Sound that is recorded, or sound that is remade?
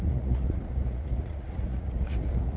remade